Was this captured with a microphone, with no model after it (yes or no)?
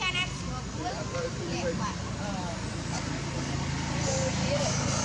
yes